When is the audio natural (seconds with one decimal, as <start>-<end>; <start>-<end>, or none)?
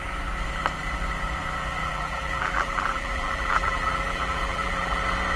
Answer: 0.0-1.8; 5.0-5.4